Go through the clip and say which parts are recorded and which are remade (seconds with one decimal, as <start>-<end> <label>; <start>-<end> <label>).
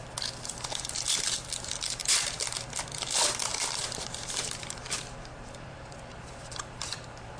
0.0-3.5 recorded; 3.5-7.4 remade